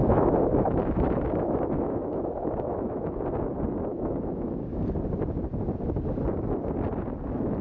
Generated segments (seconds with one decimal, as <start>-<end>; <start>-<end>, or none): 0.0-3.2; 3.9-4.6